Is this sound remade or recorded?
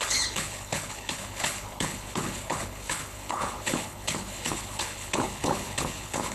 remade